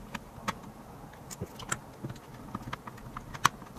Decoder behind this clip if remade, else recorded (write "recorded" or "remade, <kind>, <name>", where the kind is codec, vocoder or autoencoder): recorded